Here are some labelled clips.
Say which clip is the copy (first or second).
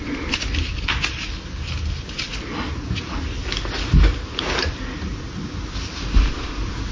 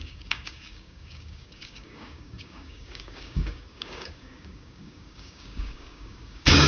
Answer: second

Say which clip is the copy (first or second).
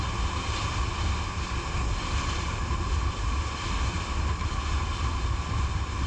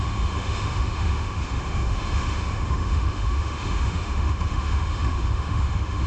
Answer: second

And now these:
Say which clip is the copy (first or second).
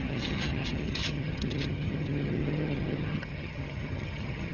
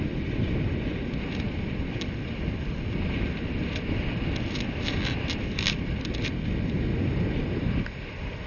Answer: first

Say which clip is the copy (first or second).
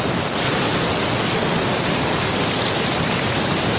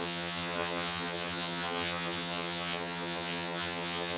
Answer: second